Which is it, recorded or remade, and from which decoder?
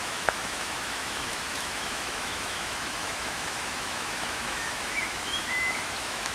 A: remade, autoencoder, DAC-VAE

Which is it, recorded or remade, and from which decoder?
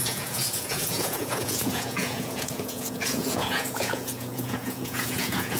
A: remade, vocoder, Vocos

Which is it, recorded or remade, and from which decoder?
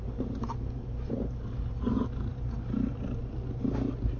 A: recorded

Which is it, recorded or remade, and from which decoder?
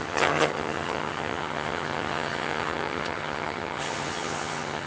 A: remade, vocoder, HiFi-GAN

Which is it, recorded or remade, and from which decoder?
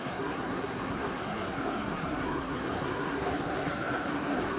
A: remade, codec, SNAC